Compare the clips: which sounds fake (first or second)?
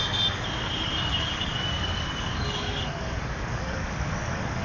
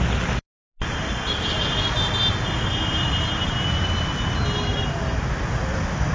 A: first